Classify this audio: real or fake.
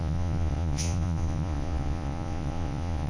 fake